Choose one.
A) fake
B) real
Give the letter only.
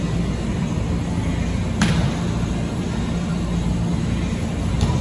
B